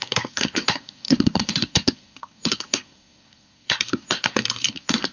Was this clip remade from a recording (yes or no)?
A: yes